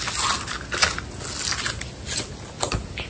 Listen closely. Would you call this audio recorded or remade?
recorded